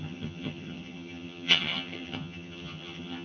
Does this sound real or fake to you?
fake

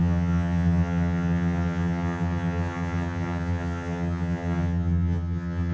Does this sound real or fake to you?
fake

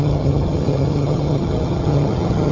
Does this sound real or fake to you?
fake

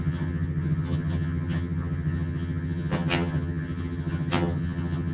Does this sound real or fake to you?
fake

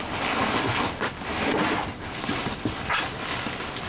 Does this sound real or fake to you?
real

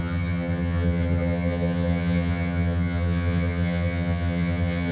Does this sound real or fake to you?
fake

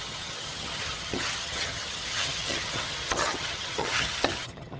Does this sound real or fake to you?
fake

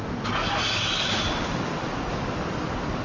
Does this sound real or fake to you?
real